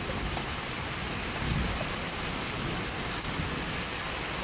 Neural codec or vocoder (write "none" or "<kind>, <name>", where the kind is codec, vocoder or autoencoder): none